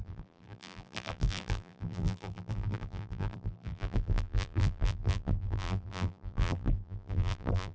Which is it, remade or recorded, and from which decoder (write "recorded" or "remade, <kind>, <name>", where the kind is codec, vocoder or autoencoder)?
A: remade, vocoder, BigVGAN v2